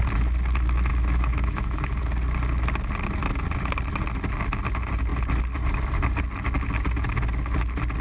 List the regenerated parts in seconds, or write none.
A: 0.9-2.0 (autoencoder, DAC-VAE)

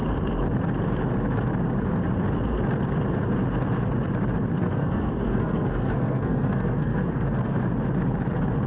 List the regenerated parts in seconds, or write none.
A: 4.6-7.6 (codec, SNAC)

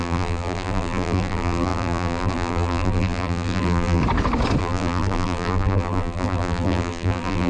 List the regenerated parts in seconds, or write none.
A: 0.0-4.0 (vocoder, BigVGAN v2); 4.6-7.5

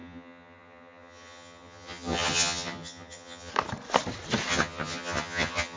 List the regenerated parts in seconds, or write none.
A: 0.0-3.5 (vocoder, HiFi-GAN); 4.5-5.8

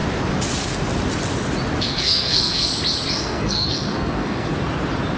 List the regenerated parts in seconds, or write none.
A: 1.8-2.7 (codec, SNAC); 3.2-4.5

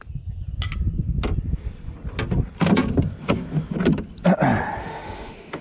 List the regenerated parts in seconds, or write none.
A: 4.8-5.6 (autoencoder, DAC-VAE)

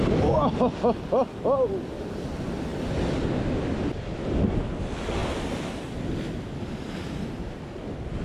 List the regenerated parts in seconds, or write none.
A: none

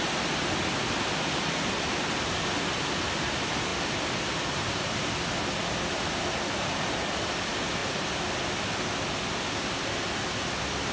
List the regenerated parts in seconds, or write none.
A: none